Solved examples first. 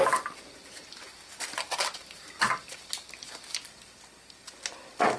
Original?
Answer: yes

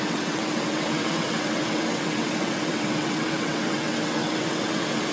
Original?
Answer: no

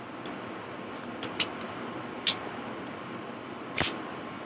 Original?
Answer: yes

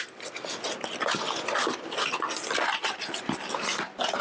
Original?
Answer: yes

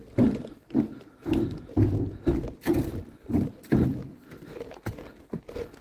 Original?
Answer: yes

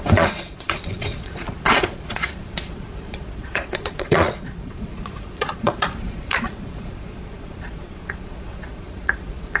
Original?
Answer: no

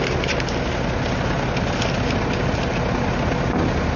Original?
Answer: yes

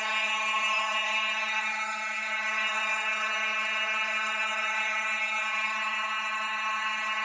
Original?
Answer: no